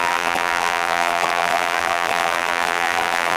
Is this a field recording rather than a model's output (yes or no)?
no